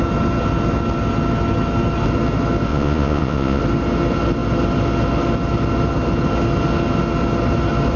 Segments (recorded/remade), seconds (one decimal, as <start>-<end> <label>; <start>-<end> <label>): 0.0-2.7 recorded; 2.7-3.6 remade; 3.6-8.0 recorded